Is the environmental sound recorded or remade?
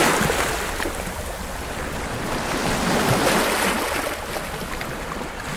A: recorded